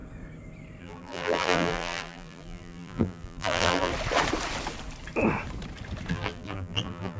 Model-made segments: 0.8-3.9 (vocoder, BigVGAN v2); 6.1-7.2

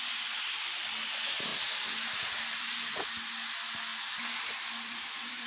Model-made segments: 1.5-2.9 (vocoder, BigVGAN v2); 3.9-5.5

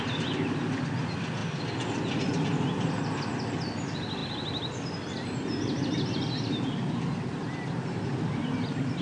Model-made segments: none

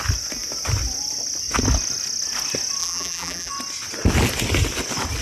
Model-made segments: 2.8-3.5 (vocoder, BigVGAN v2)

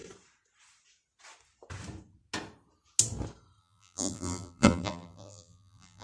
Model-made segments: 3.6-6.0 (vocoder, BigVGAN v2)